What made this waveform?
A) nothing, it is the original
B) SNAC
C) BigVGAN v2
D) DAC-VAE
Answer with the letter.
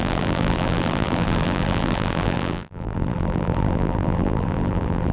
C